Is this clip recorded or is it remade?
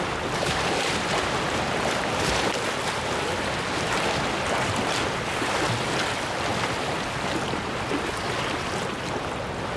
recorded